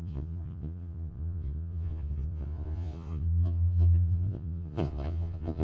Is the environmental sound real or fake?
fake